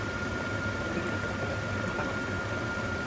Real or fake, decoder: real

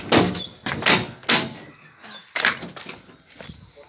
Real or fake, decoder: real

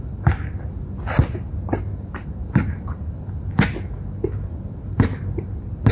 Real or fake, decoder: real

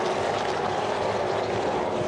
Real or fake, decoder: real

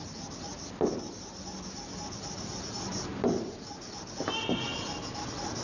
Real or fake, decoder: real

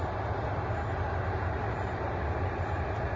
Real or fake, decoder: fake, vocoder, BigVGAN v2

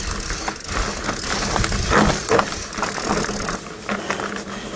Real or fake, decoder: real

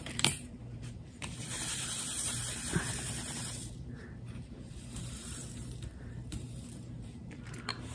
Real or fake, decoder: fake, vocoder, BigVGAN v2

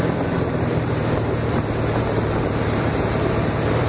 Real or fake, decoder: fake, vocoder, BigVGAN v2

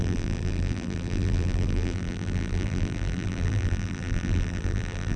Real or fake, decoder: fake, vocoder, BigVGAN v2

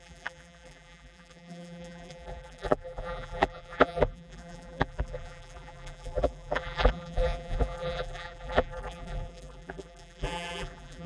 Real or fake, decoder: fake, vocoder, BigVGAN v2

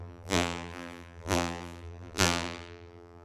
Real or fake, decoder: fake, vocoder, BigVGAN v2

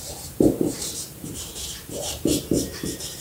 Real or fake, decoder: fake, vocoder, BigVGAN v2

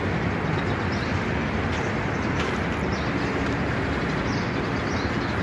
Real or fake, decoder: real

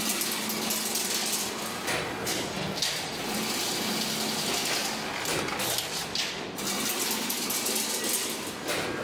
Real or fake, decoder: real